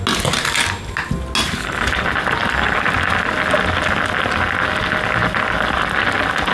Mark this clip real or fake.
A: real